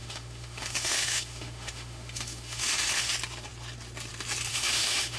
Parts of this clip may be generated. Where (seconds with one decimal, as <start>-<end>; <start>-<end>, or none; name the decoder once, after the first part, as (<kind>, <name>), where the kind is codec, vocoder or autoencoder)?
0.0-3.1 (autoencoder, DAC-VAE); 4.5-5.2